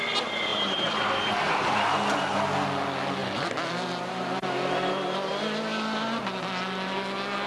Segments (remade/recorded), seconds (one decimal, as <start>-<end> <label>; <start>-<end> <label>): 0.0-0.5 recorded; 0.5-1.2 remade; 1.2-3.2 recorded; 3.2-5.3 remade; 5.3-7.5 recorded